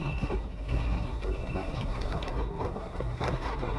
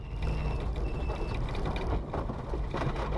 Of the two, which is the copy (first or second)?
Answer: first